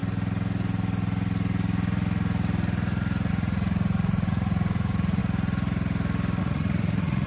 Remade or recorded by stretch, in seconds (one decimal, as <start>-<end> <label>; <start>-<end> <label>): 0.0-3.3 recorded; 3.3-5.2 remade; 5.2-6.4 recorded; 6.4-7.3 remade